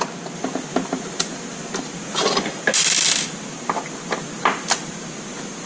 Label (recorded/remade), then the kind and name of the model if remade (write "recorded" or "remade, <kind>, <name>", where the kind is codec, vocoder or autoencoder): recorded